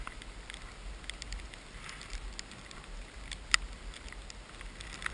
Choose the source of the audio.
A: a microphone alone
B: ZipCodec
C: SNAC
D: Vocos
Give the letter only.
A